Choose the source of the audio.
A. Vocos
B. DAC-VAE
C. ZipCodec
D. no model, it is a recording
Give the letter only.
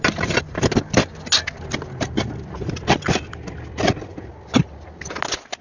D